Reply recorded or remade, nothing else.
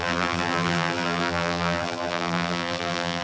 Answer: remade